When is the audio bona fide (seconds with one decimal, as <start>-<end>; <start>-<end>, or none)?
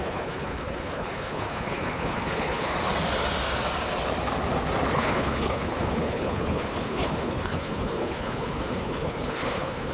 2.7-4.9